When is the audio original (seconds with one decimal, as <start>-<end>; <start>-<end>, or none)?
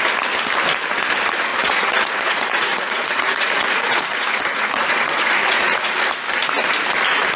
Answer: 0.0-1.5; 5.9-7.4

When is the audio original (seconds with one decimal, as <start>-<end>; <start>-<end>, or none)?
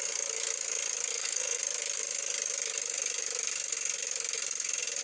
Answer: 0.0-1.1; 1.6-5.0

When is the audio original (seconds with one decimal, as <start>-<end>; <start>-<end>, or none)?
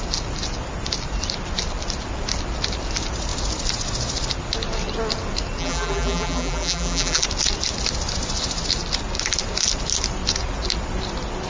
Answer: 0.0-5.6; 7.2-11.5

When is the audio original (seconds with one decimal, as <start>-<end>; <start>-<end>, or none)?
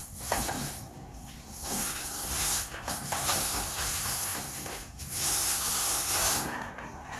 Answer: none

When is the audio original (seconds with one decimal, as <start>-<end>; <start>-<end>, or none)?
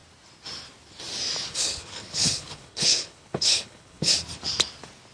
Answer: 0.0-1.5; 4.1-5.1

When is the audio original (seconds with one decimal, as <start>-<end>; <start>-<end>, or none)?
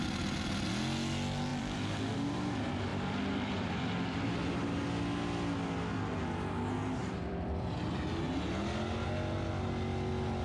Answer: 0.0-1.5; 2.1-2.9; 4.3-7.0; 7.8-10.4